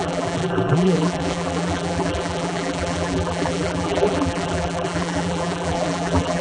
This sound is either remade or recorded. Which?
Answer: remade